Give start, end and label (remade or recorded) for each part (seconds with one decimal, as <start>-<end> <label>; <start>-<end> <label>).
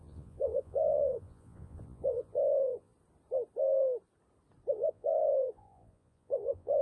0.0-2.9 remade; 2.9-4.7 recorded; 4.7-6.8 remade